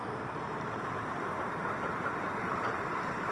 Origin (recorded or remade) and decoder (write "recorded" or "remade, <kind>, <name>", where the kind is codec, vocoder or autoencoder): remade, vocoder, BigVGAN v2